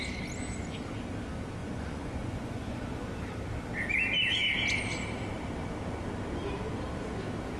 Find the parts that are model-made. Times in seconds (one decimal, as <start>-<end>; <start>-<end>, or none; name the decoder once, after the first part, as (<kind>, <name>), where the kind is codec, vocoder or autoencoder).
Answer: 1.6-2.8 (vocoder, Vocos)